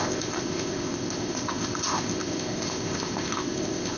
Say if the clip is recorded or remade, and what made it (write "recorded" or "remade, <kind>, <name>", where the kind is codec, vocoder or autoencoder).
remade, codec, ZipCodec